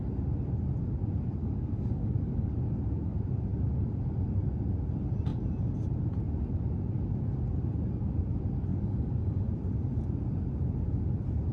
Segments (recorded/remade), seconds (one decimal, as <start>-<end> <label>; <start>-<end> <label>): 0.0-1.4 recorded; 1.4-2.6 remade; 2.6-8.7 recorded; 8.7-9.5 remade; 9.5-11.5 recorded